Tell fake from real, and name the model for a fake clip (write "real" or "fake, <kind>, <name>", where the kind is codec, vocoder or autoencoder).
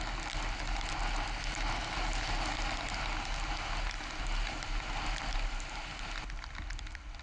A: real